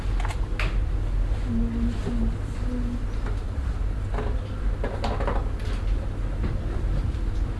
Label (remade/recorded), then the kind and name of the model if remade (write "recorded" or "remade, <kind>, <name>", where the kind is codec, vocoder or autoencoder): recorded